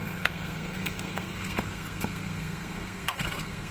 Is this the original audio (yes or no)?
no